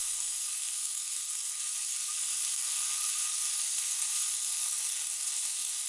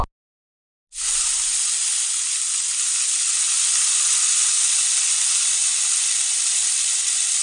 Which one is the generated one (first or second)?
first